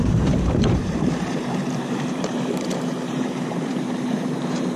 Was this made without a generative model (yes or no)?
no